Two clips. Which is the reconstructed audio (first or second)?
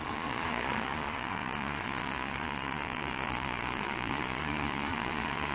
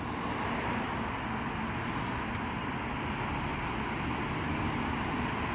first